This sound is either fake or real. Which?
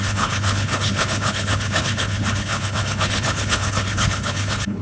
fake